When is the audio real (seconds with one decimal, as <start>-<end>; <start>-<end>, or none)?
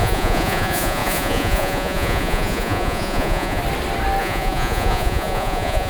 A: 3.6-4.2